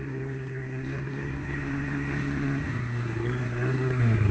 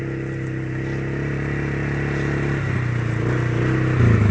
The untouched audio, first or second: second